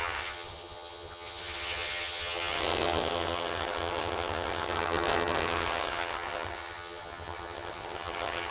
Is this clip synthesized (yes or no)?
yes